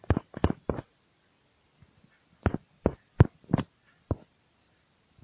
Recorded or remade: recorded